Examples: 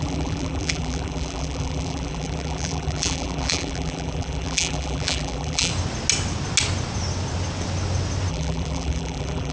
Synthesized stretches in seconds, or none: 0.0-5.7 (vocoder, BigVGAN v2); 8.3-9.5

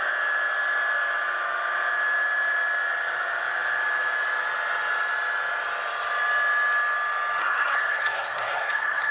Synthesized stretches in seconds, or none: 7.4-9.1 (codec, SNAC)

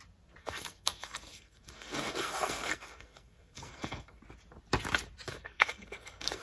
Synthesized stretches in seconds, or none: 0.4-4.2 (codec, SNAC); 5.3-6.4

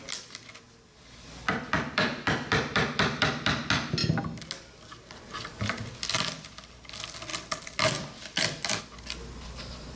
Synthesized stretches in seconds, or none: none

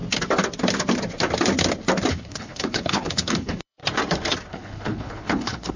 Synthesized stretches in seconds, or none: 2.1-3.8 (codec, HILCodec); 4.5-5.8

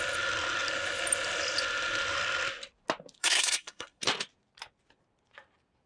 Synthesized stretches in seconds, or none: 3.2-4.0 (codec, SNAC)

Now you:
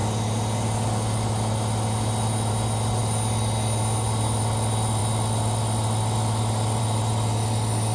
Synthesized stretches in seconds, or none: none